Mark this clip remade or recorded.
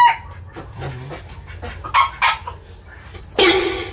recorded